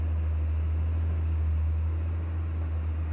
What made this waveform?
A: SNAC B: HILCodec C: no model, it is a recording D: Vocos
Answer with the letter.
C